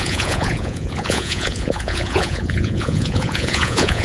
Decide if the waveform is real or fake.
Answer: fake